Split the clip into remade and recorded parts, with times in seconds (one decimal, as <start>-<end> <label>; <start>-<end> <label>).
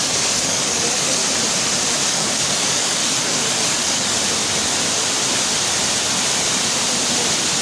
0.0-1.2 remade; 1.2-2.1 recorded; 2.1-4.2 remade; 4.2-7.6 recorded